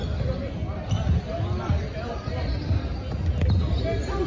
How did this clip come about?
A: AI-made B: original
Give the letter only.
B